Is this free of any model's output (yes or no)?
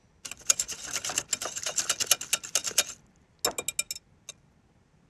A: yes